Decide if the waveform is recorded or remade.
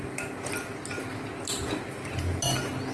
recorded